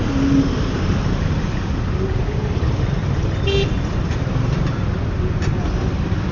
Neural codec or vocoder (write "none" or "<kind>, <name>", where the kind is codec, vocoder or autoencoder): none